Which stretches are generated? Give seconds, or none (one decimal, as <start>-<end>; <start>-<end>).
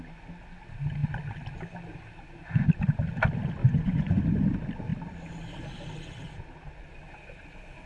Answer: 3.6-4.2